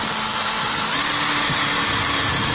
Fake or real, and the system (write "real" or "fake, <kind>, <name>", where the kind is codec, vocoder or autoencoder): real